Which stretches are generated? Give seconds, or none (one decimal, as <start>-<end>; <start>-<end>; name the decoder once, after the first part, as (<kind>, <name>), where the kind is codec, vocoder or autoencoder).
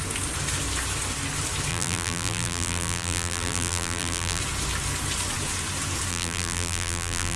1.7-4.4 (vocoder, BigVGAN v2); 6.1-7.4